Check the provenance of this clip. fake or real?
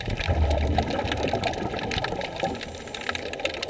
real